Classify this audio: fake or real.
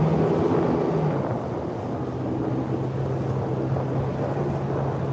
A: real